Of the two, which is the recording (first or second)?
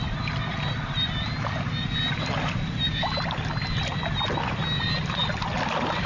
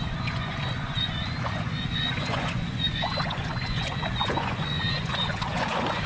first